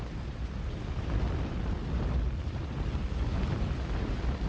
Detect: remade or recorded recorded